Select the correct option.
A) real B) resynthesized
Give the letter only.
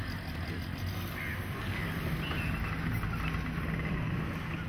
A